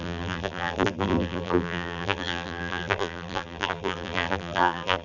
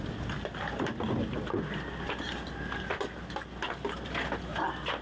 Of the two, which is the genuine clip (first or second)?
second